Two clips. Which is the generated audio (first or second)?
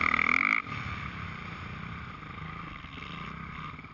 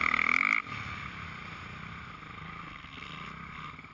first